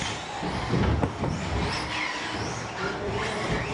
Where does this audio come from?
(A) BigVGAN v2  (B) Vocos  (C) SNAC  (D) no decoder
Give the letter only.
D